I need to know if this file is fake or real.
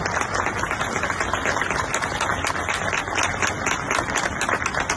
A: real